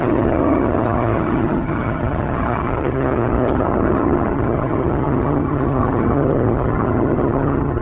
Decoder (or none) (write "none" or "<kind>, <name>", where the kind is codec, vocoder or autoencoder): vocoder, HiFi-GAN